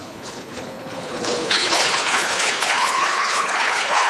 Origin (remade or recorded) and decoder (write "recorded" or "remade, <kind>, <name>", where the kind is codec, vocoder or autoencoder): remade, codec, HILCodec